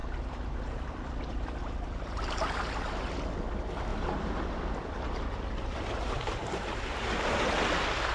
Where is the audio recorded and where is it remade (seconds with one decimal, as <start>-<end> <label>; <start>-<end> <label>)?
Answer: 0.0-1.6 remade; 1.6-3.9 recorded; 3.9-7.4 remade; 7.4-8.1 recorded

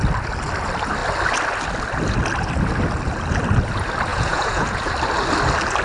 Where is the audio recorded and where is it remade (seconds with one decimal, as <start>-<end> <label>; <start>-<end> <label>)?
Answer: 0.0-4.1 recorded; 4.1-4.9 remade; 4.9-5.8 recorded

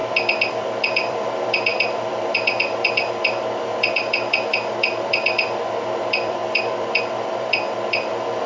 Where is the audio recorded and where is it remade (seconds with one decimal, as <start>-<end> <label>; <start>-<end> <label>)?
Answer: 0.0-0.5 recorded; 0.5-8.5 remade